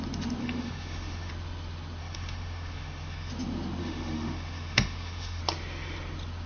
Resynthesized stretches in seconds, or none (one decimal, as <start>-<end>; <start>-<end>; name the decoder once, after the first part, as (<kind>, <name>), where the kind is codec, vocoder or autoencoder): 0.4-1.3 (autoencoder, DAC-VAE); 2.0-3.3; 3.8-5.4